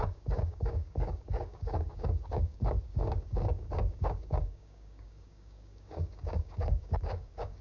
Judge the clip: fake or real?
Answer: fake